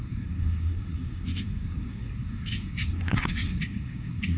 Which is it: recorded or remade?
remade